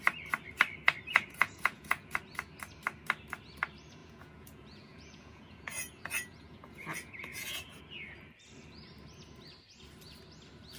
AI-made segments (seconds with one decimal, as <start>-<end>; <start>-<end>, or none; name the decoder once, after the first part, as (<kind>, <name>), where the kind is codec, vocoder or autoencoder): 1.1-2.1 (vocoder, Vocos); 4.0-7.8